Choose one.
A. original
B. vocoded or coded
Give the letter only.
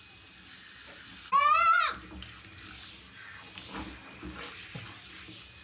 A